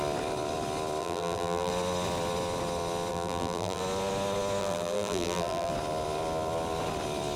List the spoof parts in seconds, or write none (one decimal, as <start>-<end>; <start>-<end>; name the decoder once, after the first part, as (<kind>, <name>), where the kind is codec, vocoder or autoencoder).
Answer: 1.0-1.7 (vocoder, BigVGAN v2); 3.1-3.8; 4.6-5.7

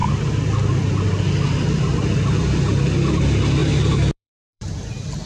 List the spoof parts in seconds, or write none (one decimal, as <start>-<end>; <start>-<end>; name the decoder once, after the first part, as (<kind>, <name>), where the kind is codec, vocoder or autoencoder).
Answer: 3.6-4.8 (vocoder, BigVGAN v2)

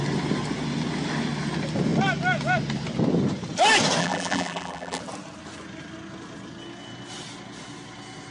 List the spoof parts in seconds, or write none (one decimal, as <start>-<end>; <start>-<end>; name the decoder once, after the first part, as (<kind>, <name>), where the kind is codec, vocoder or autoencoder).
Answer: 4.0-5.0 (vocoder, BigVGAN v2)

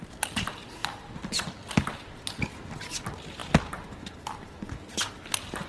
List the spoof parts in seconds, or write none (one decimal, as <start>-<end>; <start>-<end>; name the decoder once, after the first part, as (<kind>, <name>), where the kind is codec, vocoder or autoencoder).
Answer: none

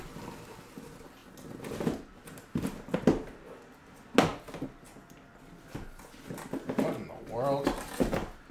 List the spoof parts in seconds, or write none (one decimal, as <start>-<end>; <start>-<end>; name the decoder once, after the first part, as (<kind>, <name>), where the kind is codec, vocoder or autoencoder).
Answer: none

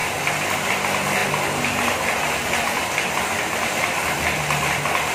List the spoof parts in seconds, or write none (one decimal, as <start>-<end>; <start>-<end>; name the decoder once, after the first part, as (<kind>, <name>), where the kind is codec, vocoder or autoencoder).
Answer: 0.0-0.7 (vocoder, BigVGAN v2)

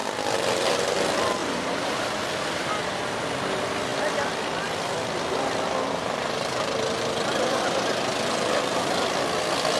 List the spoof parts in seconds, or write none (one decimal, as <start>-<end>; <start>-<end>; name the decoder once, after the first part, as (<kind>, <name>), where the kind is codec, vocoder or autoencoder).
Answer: 1.4-2.7 (vocoder, BigVGAN v2); 3.9-7.6